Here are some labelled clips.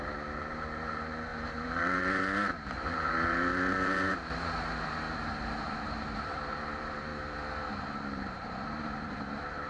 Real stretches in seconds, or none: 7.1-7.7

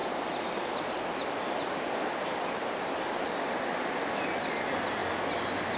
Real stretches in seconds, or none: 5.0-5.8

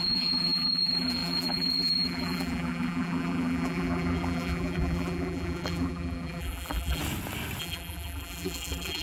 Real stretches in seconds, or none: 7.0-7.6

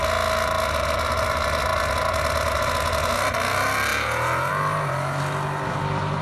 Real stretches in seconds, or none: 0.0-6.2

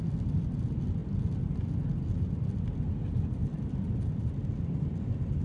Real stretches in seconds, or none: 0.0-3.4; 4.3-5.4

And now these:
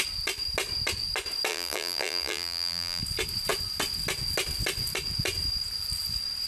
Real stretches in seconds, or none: 0.0-1.5; 3.0-6.5

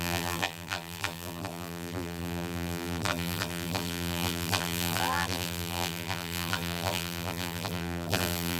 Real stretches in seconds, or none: none

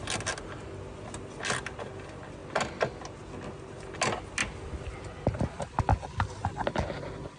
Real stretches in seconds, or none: 0.0-4.4; 5.8-7.4